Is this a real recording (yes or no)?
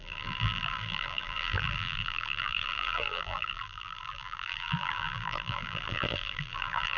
no